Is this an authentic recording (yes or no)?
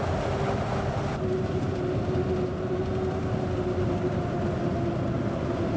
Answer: yes